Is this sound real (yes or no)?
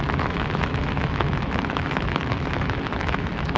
no